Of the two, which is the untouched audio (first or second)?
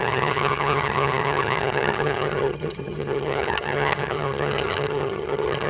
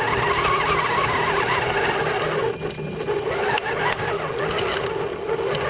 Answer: second